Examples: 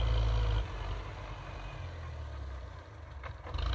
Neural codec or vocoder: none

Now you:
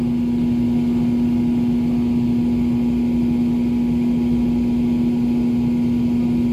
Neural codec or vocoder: none